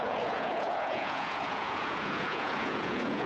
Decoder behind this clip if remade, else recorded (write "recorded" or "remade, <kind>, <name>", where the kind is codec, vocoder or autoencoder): remade, vocoder, Vocos